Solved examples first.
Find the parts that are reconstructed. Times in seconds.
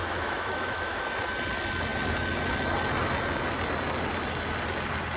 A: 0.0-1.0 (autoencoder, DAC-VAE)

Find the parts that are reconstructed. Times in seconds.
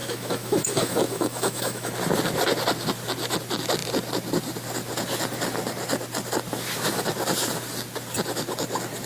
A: 0.0-1.9 (autoencoder, DAC-VAE)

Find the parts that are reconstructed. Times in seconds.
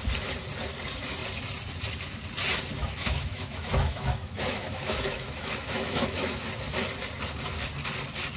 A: 2.8-6.3 (autoencoder, DAC-VAE)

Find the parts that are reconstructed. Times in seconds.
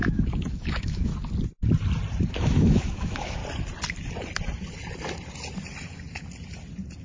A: 0.0-1.1 (autoencoder, DAC-VAE); 2.4-3.4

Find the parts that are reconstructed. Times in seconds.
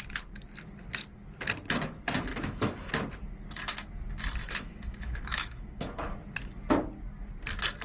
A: 2.3-2.9 (autoencoder, DAC-VAE); 4.4-6.1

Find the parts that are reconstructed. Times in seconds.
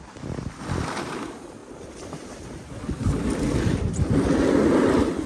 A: none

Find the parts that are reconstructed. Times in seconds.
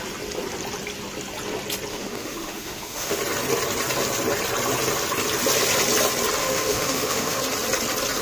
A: 1.9-3.2 (autoencoder, DAC-VAE); 6.4-7.4